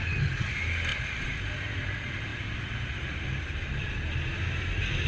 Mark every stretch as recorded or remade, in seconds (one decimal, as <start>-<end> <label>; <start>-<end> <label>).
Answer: 0.0-0.9 recorded; 0.9-1.4 remade; 1.4-2.3 recorded; 2.3-3.9 remade; 3.9-5.1 recorded